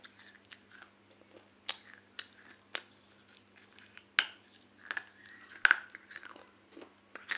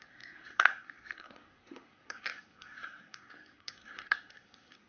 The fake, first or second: second